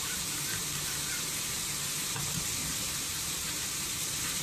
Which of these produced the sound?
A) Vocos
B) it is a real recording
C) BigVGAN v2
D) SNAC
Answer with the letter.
C